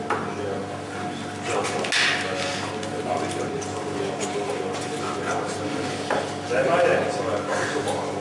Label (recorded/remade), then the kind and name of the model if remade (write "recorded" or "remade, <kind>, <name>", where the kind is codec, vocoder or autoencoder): recorded